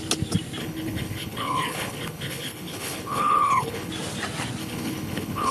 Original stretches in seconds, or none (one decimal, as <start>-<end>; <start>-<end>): 0.0-0.6; 3.9-4.6